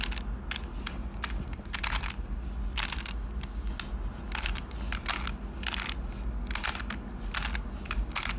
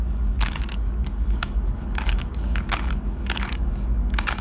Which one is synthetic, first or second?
second